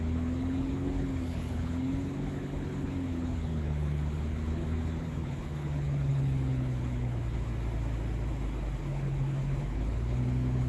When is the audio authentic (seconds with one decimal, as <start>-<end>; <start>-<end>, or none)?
7.5-8.8